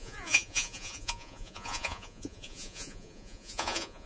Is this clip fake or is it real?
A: fake